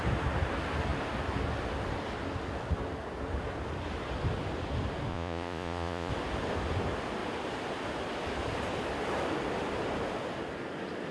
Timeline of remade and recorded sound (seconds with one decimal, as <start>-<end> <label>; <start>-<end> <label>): 0.0-5.1 recorded; 5.1-6.1 remade; 6.1-11.1 recorded

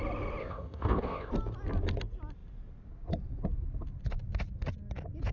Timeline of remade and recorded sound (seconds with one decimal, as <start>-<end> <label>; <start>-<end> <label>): 0.0-0.4 recorded; 0.4-1.3 remade; 1.3-5.3 recorded

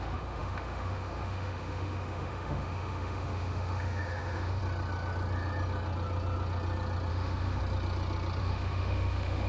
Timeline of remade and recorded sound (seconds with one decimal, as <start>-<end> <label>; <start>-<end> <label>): 0.0-4.6 remade; 4.6-7.1 recorded; 7.1-7.6 remade; 7.6-8.4 recorded; 8.4-9.5 remade

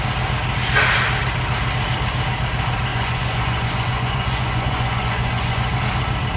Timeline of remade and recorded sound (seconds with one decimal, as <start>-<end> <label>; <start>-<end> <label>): 0.0-2.9 recorded; 2.9-5.8 remade; 5.8-6.4 recorded

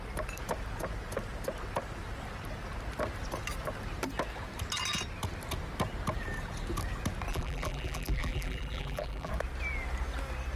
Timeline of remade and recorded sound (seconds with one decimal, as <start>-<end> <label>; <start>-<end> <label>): 0.0-7.3 recorded; 7.3-9.3 remade; 9.3-10.6 recorded

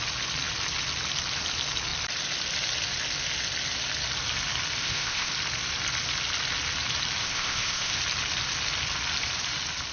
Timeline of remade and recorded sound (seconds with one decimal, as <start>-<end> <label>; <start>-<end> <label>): 0.0-4.8 recorded; 4.8-5.3 remade; 5.3-7.2 recorded; 7.2-8.0 remade; 8.0-9.9 recorded